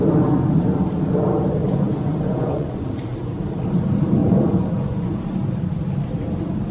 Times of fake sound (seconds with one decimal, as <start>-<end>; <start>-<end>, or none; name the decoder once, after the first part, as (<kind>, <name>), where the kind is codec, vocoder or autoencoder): 1.6-2.8 (vocoder, Vocos); 4.2-5.2